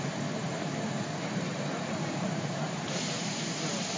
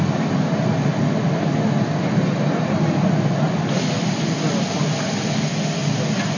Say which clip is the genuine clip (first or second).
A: second